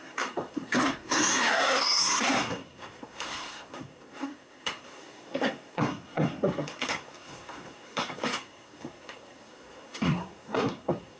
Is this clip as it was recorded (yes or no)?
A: no